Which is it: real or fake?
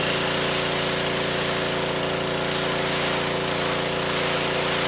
real